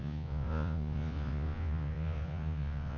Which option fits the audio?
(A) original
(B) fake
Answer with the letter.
B